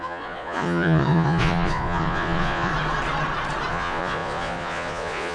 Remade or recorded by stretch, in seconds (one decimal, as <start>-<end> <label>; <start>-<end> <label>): 0.0-2.7 remade; 2.7-3.7 recorded; 3.7-5.3 remade